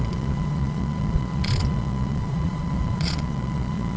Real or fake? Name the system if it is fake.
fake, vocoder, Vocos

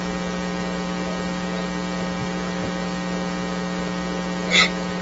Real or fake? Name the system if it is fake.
real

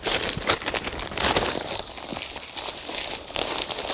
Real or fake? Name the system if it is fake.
real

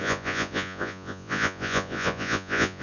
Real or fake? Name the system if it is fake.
fake, vocoder, Vocos